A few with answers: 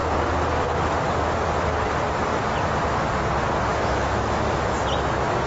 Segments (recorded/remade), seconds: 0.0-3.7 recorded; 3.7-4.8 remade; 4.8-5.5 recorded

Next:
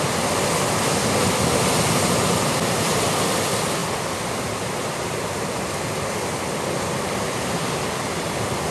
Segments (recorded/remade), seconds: 0.0-8.7 recorded

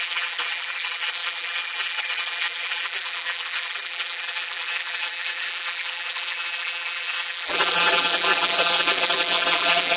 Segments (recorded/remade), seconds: 0.0-10.0 remade

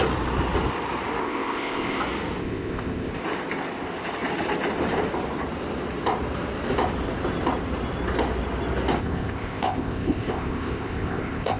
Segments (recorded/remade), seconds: 0.0-1.2 recorded; 1.2-2.0 remade; 2.0-2.4 recorded; 2.4-3.1 remade; 3.1-9.0 recorded; 9.0-11.6 remade

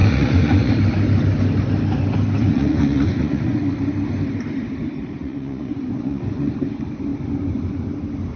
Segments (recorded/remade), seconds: 0.0-0.7 remade; 0.7-2.4 recorded; 2.4-3.6 remade; 3.6-5.2 recorded; 5.2-6.5 remade; 6.5-8.4 recorded

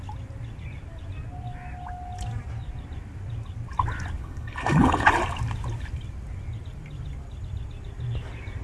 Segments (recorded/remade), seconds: 0.0-4.2 recorded; 4.2-5.1 remade; 5.1-8.6 recorded

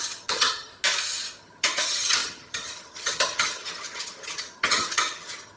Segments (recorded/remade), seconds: 0.0-0.7 remade; 0.7-1.4 recorded; 1.4-5.6 remade